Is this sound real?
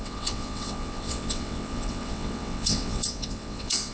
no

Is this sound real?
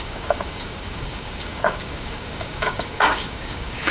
no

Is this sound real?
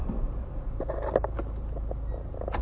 yes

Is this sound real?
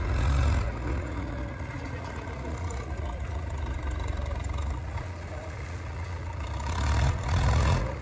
no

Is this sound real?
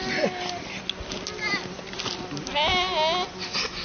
yes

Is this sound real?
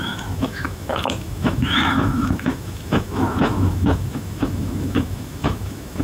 no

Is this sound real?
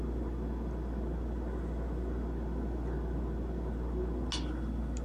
yes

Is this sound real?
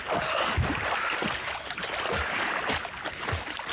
yes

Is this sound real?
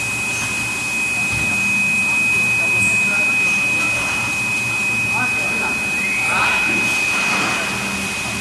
yes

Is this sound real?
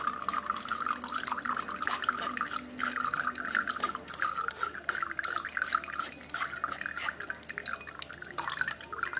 yes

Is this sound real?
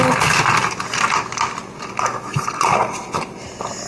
yes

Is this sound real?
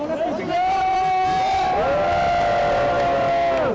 yes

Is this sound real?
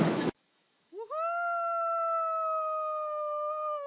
no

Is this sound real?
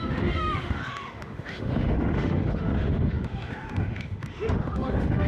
no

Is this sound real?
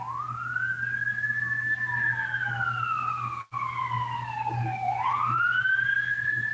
yes